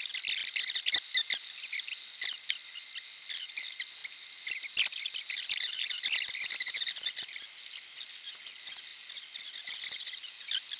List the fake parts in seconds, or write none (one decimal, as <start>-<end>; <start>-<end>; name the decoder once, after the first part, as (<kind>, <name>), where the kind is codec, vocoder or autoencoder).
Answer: none